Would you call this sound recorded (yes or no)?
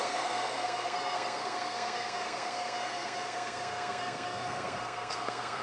no